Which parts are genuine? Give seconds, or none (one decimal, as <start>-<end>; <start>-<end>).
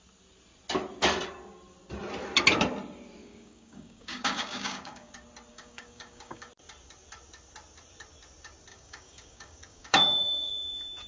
0.0-3.2; 5.1-5.5; 6.5-8.7; 10.5-11.1